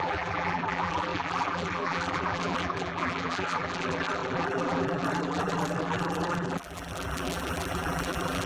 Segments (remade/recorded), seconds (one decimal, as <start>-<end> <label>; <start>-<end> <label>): 0.0-8.5 remade